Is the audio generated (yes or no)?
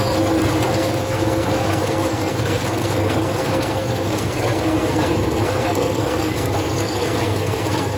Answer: yes